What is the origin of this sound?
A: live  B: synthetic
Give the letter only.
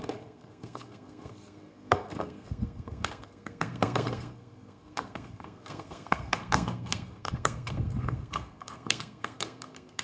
B